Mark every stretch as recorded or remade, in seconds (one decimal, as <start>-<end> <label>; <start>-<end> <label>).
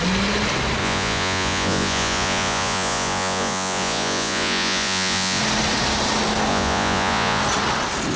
0.0-0.8 recorded; 0.8-5.4 remade; 5.4-6.5 recorded; 6.5-7.4 remade; 7.4-8.2 recorded